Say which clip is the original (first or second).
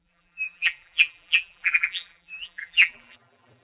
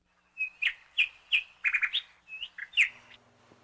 second